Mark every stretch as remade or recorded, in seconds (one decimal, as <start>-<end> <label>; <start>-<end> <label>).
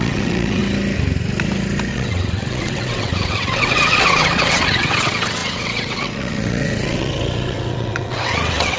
0.0-0.6 remade; 0.6-1.9 recorded; 1.9-8.8 remade